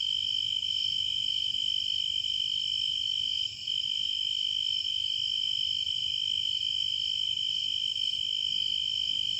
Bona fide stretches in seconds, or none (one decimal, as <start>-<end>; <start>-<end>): 0.0-9.4